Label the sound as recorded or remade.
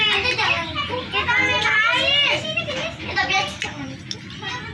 recorded